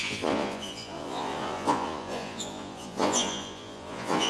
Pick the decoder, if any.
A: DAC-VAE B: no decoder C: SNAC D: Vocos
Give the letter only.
D